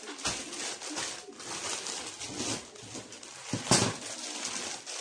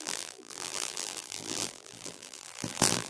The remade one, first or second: second